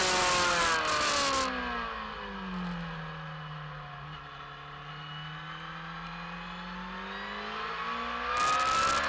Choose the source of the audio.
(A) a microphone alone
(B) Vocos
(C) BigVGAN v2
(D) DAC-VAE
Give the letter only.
A